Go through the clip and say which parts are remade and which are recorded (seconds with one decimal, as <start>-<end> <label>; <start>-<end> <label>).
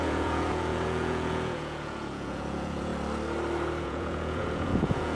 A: 0.0-2.9 remade; 2.9-3.8 recorded; 3.8-5.2 remade